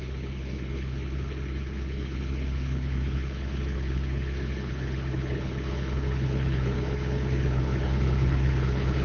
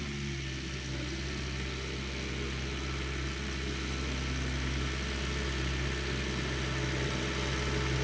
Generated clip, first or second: first